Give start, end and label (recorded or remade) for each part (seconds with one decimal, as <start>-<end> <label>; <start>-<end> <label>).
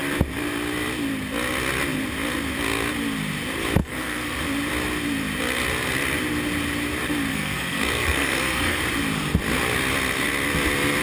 0.0-3.8 recorded; 3.8-4.4 remade; 4.4-7.3 recorded; 7.3-8.8 remade; 8.8-11.0 recorded